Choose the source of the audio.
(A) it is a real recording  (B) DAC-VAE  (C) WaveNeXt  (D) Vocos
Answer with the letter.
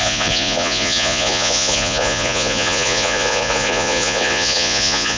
D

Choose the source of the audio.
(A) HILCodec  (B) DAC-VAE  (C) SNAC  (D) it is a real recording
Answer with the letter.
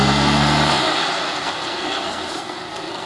C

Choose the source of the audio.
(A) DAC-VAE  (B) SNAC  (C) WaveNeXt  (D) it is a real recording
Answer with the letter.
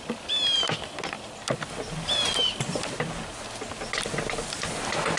D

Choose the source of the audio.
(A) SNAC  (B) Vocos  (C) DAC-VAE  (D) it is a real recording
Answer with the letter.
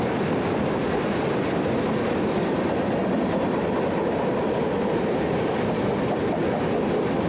D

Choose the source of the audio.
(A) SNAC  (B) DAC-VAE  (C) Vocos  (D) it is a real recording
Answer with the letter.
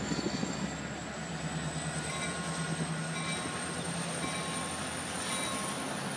D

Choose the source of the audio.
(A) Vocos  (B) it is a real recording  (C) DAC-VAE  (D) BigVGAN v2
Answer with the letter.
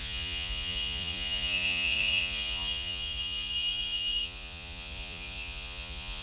A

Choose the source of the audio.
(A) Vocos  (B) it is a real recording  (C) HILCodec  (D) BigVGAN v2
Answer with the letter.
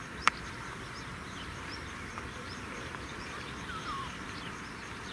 D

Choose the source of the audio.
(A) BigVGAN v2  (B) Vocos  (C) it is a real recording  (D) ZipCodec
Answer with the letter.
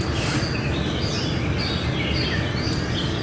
C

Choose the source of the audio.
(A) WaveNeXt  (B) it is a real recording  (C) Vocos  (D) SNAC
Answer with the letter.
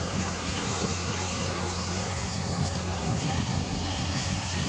D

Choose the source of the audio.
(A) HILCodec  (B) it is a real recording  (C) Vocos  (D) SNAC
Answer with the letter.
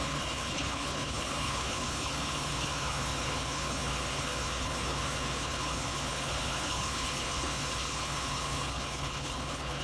A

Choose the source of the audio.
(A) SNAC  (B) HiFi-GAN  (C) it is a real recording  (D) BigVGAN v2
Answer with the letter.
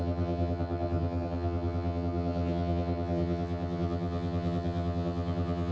B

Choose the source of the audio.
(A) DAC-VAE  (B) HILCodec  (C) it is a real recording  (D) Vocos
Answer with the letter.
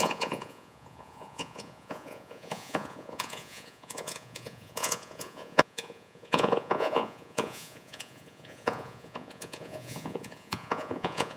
D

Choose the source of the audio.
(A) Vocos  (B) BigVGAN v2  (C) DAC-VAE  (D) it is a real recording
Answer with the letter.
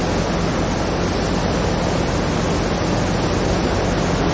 D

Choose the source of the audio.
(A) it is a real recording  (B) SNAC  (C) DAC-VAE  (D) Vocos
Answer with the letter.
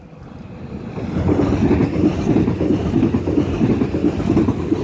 A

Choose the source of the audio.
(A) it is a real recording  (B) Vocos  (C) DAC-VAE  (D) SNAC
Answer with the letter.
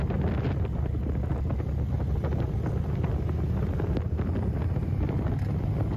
A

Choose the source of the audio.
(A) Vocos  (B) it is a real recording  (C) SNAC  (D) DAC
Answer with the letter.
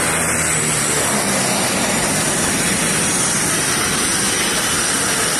B